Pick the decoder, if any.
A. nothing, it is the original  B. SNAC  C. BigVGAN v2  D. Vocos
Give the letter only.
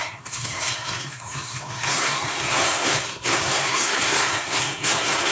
B